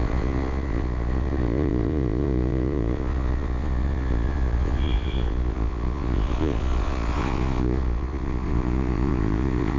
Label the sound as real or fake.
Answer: fake